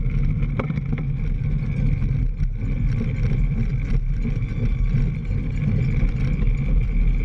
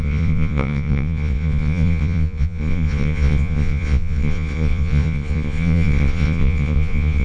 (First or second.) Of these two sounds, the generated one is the second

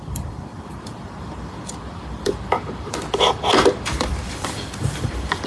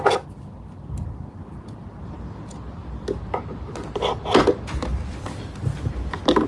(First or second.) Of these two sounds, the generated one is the first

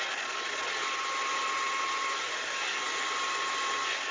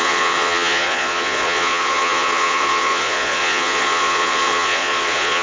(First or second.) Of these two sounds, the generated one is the second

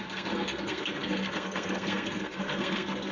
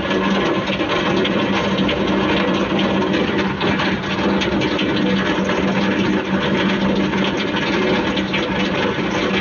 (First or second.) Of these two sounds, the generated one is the first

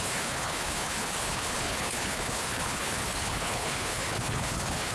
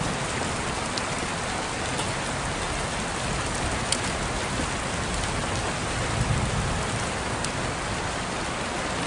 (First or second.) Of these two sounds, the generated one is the first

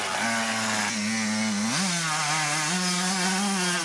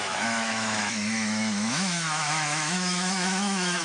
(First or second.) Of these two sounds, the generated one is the second